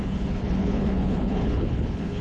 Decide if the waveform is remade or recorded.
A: remade